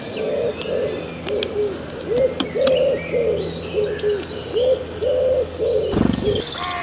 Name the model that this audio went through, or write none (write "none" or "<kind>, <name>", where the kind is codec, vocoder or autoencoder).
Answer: none